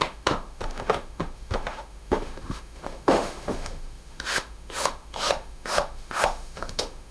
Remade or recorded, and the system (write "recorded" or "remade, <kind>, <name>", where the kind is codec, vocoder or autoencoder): remade, autoencoder, DAC-VAE